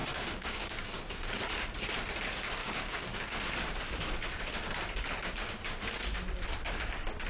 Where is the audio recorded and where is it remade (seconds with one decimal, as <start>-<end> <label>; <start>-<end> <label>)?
0.0-1.4 remade; 1.4-2.6 recorded; 2.6-3.4 remade; 3.4-5.2 recorded; 5.2-5.8 remade; 5.8-7.3 recorded